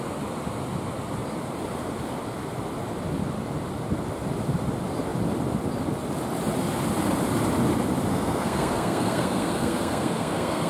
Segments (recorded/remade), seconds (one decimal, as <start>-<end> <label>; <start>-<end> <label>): 0.0-8.1 recorded; 8.1-10.7 remade